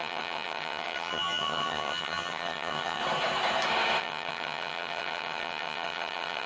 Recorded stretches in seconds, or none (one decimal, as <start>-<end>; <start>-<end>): 3.0-4.0